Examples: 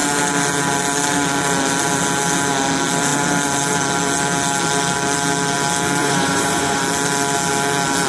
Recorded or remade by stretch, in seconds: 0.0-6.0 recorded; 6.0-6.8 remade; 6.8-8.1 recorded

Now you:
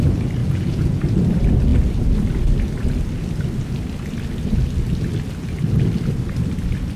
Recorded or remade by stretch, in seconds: 0.0-0.4 recorded; 0.4-1.0 remade; 1.0-7.0 recorded